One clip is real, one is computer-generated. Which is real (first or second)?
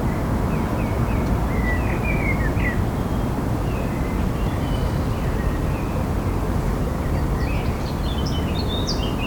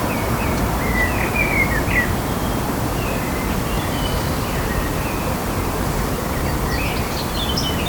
first